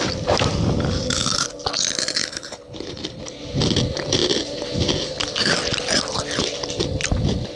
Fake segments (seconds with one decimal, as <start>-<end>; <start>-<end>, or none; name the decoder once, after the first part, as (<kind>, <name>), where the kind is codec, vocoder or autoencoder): 2.2-3.2 (codec, HILCodec)